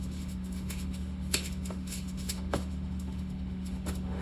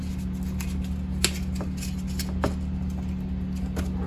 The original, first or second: second